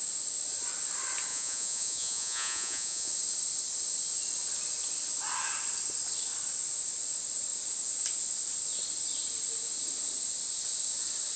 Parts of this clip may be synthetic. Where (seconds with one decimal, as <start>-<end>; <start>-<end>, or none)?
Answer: 1.3-3.1